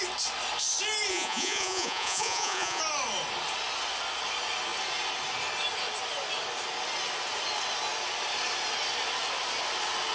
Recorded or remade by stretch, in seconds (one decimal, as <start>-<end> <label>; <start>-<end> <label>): 0.0-1.1 recorded; 1.1-2.8 remade; 2.8-10.1 recorded